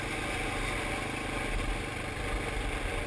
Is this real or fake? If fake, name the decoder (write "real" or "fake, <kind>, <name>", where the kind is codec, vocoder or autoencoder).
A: real